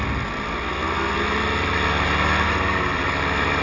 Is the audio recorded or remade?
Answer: recorded